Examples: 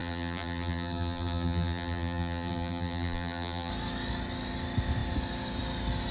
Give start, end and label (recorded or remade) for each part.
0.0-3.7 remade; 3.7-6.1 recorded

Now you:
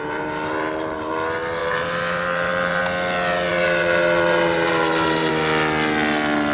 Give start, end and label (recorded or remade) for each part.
0.0-1.1 remade; 1.1-1.6 recorded; 1.6-2.8 remade; 2.8-3.5 recorded; 3.5-5.3 remade; 5.3-6.5 recorded